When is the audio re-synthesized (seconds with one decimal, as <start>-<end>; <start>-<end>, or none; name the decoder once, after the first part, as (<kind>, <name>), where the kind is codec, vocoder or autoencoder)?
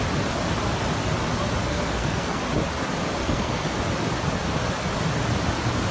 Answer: 1.6-2.4 (codec, SNAC); 3.2-3.8